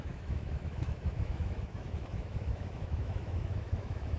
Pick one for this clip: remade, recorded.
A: remade